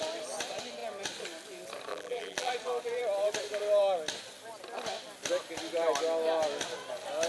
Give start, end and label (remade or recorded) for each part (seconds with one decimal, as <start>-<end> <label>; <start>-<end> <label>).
0.0-1.9 recorded; 1.9-2.5 remade; 2.5-7.3 recorded